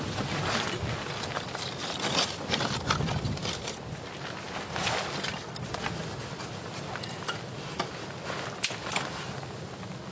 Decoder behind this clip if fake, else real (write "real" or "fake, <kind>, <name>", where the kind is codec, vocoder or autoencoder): real